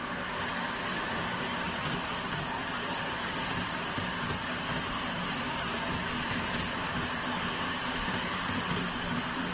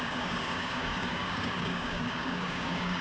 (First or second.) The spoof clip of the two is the second